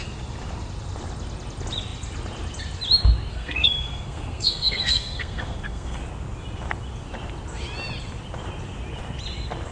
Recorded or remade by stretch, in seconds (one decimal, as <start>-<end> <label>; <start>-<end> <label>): 0.0-3.3 recorded; 3.3-6.0 remade; 6.0-9.7 recorded